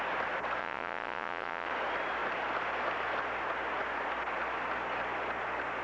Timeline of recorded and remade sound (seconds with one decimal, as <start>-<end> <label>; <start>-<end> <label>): 0.0-0.6 recorded; 0.6-1.7 remade; 1.7-5.8 recorded